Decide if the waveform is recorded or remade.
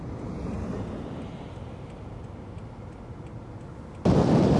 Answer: recorded